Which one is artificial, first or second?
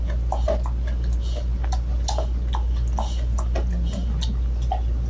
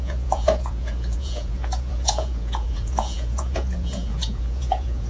second